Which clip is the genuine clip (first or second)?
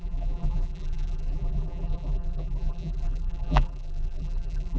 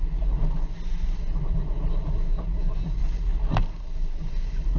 second